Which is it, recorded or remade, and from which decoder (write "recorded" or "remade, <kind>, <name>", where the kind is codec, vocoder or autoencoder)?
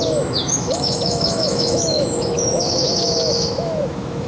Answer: remade, autoencoder, DAC-VAE